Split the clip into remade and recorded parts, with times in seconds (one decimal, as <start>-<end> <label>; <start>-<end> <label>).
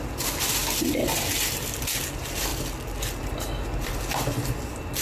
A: 0.0-5.0 recorded